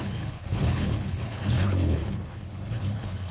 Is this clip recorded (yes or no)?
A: no